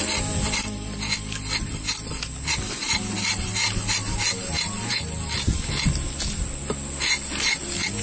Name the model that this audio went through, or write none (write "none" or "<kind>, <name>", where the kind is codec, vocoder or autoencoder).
none